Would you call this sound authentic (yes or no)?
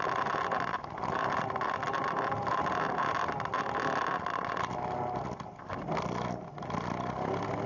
yes